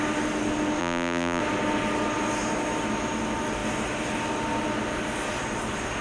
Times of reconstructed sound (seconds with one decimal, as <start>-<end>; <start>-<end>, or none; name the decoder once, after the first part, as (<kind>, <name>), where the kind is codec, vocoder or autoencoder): 0.8-1.4 (vocoder, BigVGAN v2)